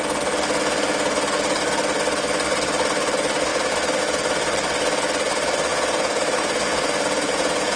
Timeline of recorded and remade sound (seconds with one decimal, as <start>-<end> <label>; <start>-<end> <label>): 0.0-5.7 recorded; 5.7-7.8 remade